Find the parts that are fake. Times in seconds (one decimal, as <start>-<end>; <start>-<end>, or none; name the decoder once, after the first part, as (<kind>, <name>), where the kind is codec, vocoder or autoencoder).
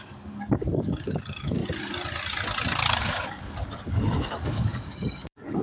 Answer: 0.0-1.6 (codec, DAC); 3.0-5.6